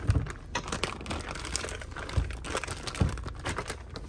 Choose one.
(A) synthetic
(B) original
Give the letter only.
B